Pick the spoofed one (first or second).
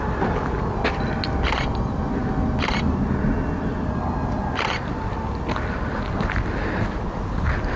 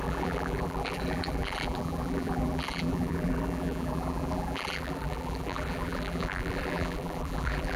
second